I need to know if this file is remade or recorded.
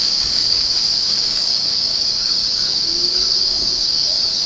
remade